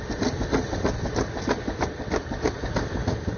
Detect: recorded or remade recorded